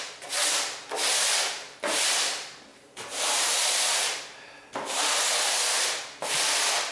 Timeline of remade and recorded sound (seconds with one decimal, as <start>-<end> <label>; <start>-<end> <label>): 0.0-2.7 recorded; 2.7-4.2 remade; 4.2-6.9 recorded